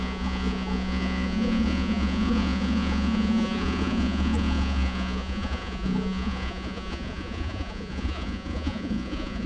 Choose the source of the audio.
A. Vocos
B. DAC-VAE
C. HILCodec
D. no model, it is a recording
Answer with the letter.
A